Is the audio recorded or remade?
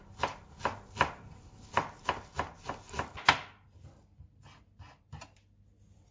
recorded